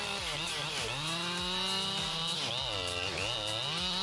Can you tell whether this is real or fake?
real